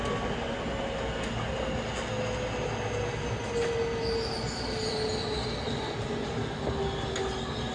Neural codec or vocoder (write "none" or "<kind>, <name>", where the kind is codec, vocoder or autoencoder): none